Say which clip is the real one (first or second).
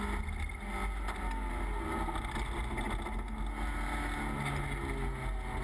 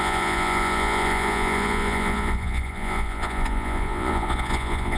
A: first